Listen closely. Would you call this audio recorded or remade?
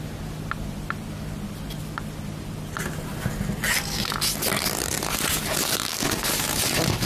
recorded